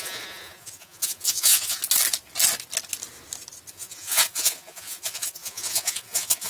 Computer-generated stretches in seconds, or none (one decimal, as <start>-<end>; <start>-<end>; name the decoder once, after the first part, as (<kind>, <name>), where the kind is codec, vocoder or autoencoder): 0.0-1.8 (vocoder, Vocos); 3.7-6.5

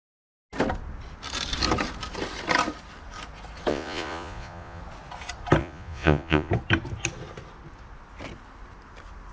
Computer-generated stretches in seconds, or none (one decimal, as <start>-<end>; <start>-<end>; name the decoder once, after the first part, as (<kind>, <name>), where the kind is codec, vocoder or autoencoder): 3.7-4.8 (vocoder, Vocos); 5.6-6.5

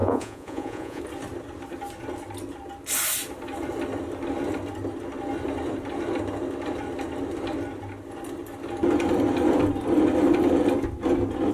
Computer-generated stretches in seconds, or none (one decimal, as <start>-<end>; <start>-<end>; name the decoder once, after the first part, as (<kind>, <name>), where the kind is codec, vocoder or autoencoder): 0.0-1.0 (vocoder, Vocos)